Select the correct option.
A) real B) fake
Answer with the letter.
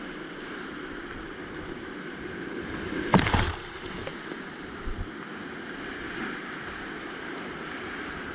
A